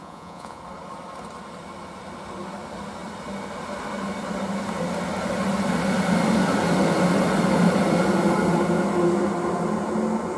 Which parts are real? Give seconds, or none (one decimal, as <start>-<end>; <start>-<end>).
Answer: 0.6-10.4